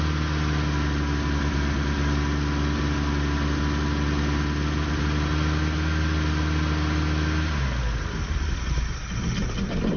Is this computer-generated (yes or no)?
no